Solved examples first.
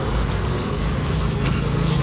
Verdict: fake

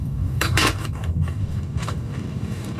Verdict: fake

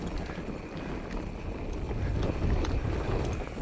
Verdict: real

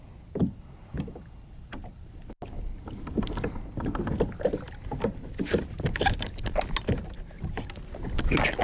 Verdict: real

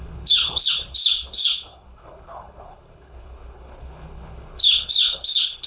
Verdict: fake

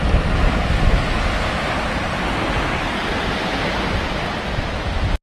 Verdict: real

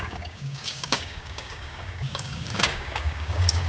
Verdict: fake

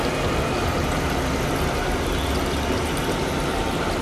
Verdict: real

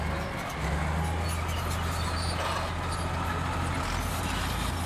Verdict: real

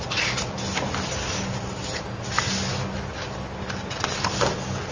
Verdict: real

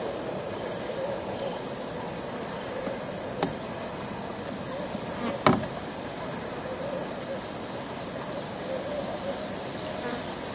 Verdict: real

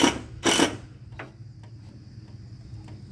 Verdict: real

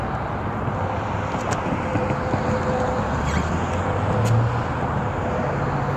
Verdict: real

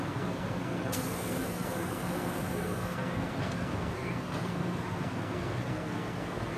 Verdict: fake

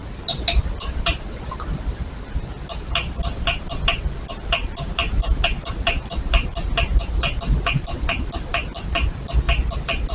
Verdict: real